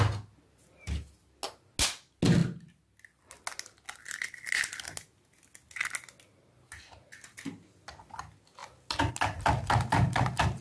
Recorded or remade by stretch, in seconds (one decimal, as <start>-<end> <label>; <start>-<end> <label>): 0.0-10.6 recorded